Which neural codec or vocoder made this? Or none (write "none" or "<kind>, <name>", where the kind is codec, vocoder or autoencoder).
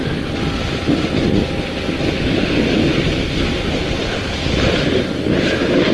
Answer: none